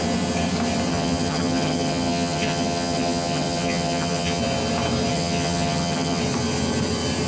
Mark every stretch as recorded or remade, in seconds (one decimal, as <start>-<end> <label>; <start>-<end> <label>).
0.0-0.9 recorded; 0.9-4.4 remade; 4.4-5.1 recorded; 5.1-6.2 remade; 6.2-7.3 recorded